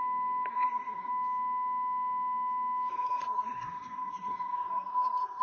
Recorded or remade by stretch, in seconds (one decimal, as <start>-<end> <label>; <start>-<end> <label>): 0.0-0.5 recorded; 0.5-1.1 remade; 1.1-2.9 recorded; 2.9-5.4 remade